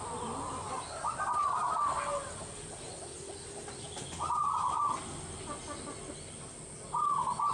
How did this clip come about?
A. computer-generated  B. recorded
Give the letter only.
B